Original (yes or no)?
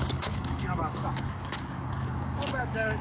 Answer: no